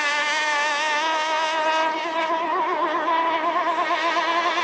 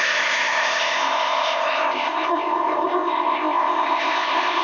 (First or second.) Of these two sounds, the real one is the first